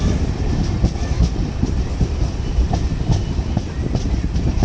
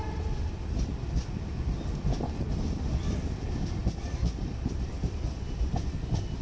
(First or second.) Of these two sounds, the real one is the second